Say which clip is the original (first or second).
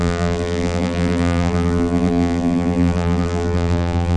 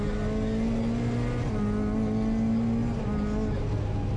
second